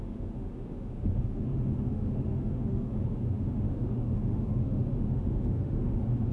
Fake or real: fake